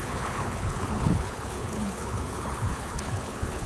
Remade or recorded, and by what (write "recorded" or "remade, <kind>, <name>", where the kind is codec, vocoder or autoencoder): remade, codec, HILCodec